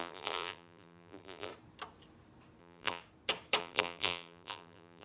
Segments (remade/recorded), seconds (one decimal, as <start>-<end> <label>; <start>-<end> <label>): 0.0-1.5 remade; 1.5-2.6 recorded; 2.6-3.0 remade; 3.0-3.6 recorded; 3.6-5.0 remade

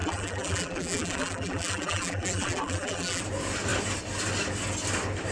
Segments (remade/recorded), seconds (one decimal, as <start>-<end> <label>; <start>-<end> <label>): 0.0-3.2 remade; 3.2-5.3 recorded

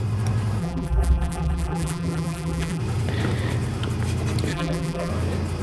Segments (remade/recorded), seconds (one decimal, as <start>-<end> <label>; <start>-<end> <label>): 0.0-0.6 recorded; 0.6-2.8 remade; 2.8-4.5 recorded; 4.5-5.1 remade; 5.1-5.6 recorded

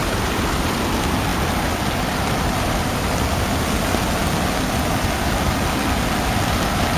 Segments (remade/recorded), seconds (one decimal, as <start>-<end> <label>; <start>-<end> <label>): 0.0-0.8 remade; 0.8-7.0 recorded

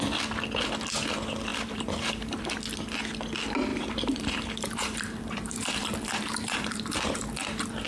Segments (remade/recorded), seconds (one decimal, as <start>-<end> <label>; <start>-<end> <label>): 0.0-1.5 recorded; 1.5-2.5 remade; 2.5-3.7 recorded; 3.7-7.9 remade

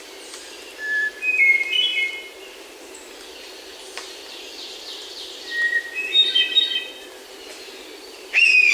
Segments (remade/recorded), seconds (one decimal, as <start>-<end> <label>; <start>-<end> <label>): 0.0-8.7 recorded

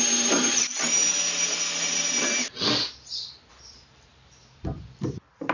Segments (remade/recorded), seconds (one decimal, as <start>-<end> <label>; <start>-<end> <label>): 0.0-1.1 remade; 1.1-3.5 recorded; 3.5-5.5 remade